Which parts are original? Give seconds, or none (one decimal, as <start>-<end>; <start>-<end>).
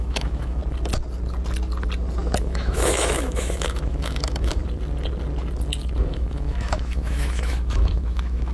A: 0.6-2.4; 4.6-6.1